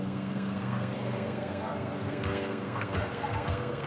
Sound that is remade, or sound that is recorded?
remade